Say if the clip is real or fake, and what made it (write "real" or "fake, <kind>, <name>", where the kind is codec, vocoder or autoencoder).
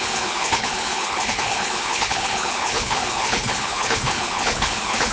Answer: fake, codec, HILCodec